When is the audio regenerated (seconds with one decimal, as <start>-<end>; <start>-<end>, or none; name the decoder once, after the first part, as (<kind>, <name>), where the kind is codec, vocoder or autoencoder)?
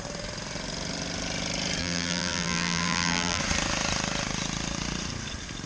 1.8-3.4 (vocoder, BigVGAN v2)